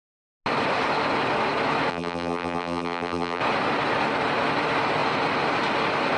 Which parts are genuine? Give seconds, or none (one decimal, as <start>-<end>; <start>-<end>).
0.0-1.9; 3.4-6.2